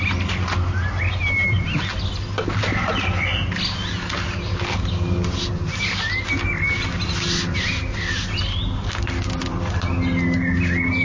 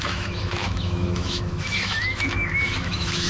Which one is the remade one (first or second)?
second